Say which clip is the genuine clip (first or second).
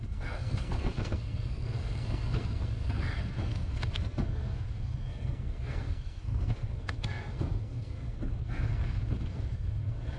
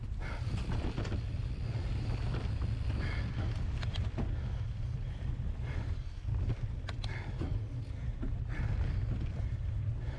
second